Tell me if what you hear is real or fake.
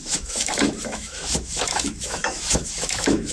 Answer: fake